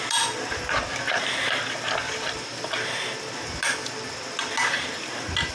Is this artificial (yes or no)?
no